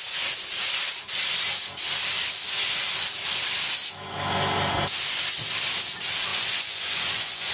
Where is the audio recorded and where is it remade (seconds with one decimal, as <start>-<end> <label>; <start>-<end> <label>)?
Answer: 0.0-6.3 recorded; 6.3-7.5 remade